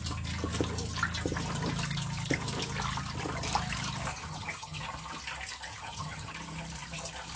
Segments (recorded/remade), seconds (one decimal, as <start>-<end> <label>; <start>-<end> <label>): 0.0-4.1 recorded; 4.1-4.8 remade; 4.8-5.7 recorded; 5.7-6.3 remade; 6.3-7.4 recorded

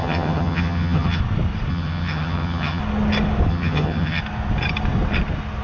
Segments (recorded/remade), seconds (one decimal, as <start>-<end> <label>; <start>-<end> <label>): 0.0-1.2 remade; 1.2-1.7 recorded; 1.7-2.8 remade; 2.8-3.5 recorded; 3.5-4.2 remade; 4.2-5.6 recorded